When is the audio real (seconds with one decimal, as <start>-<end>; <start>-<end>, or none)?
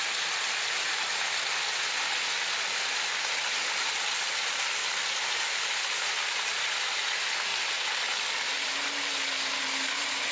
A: 0.0-10.3